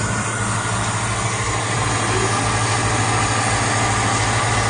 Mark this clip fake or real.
real